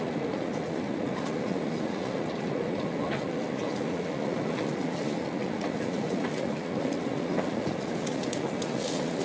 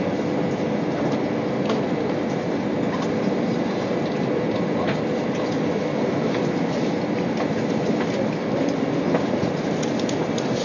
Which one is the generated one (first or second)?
first